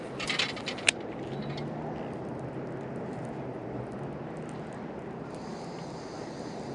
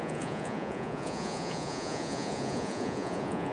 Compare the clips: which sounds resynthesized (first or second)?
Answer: second